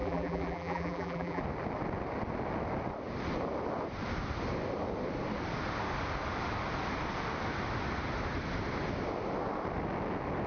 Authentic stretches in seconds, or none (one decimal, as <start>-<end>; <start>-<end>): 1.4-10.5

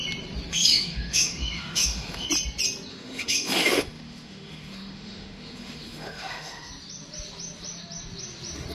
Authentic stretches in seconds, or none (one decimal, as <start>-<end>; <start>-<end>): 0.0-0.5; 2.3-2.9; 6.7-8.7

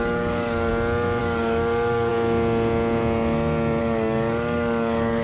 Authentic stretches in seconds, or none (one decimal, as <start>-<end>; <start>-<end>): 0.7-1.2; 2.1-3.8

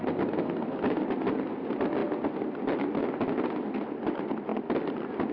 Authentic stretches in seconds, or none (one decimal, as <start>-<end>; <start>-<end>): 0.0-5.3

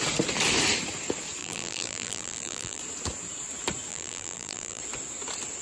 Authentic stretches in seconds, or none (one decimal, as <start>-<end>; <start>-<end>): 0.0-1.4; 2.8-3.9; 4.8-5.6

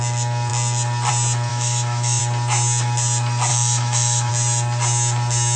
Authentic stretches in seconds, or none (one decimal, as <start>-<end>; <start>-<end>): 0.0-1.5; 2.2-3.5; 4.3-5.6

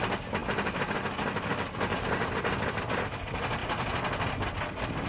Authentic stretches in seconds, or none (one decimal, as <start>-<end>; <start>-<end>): 3.6-4.3

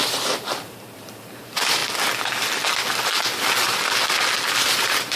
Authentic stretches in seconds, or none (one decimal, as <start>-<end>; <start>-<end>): 1.8-4.6